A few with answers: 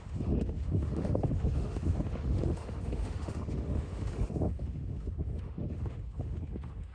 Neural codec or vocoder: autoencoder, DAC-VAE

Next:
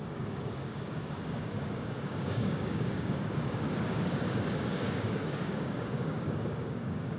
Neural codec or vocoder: codec, DAC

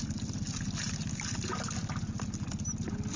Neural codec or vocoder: none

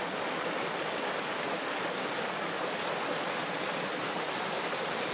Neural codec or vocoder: none